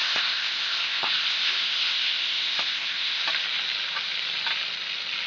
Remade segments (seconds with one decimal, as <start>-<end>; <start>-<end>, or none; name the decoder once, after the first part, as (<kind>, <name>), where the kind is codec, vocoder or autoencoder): 0.0-3.2 (codec, ZipCodec)